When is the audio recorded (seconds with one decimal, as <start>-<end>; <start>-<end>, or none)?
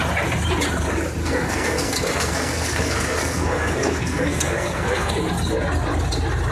0.0-1.2; 5.1-6.5